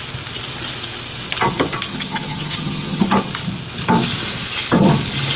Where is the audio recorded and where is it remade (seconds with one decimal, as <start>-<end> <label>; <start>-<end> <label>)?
0.0-1.9 recorded; 1.9-3.0 remade; 3.0-5.4 recorded